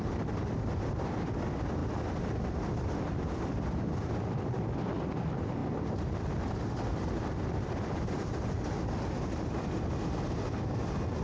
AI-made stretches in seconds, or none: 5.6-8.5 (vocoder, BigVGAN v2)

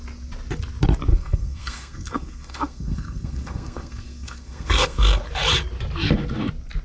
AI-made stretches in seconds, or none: 1.1-5.2 (codec, SNAC)

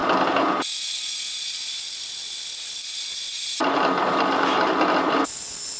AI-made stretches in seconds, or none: none

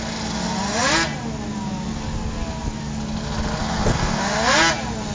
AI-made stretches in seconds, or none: 3.6-4.2 (codec, SNAC)

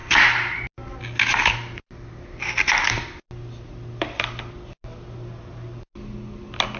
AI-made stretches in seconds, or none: none

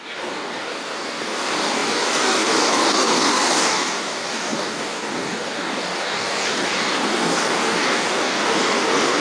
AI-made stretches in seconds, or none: 0.0-9.2 (codec, DAC)